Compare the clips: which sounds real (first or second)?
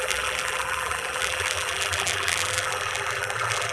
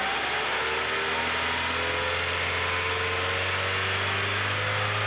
second